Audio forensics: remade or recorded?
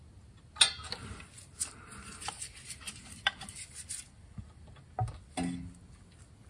recorded